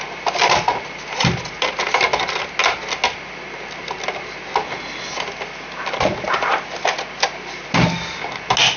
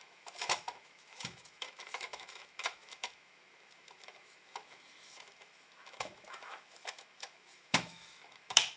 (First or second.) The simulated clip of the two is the second